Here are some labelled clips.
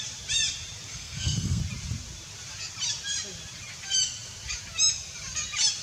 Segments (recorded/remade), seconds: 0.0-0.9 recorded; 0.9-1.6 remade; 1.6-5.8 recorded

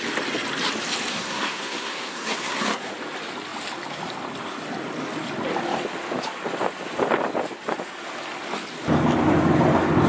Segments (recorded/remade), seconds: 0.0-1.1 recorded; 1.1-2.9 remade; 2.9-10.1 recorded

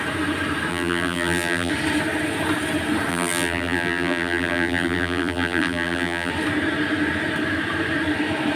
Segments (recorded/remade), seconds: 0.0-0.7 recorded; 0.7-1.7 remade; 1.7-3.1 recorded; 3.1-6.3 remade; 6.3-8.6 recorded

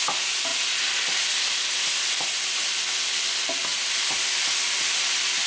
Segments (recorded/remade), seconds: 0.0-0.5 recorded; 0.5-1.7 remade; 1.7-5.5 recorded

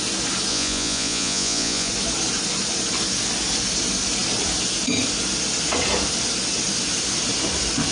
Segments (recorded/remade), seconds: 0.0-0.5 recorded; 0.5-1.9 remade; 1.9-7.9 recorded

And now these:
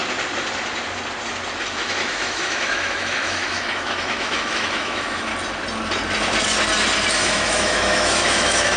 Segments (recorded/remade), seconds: 0.0-1.6 recorded; 1.6-5.3 remade; 5.3-7.1 recorded; 7.1-8.8 remade

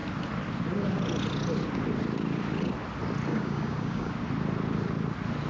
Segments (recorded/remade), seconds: 0.0-3.3 recorded; 3.3-4.1 remade; 4.1-5.5 recorded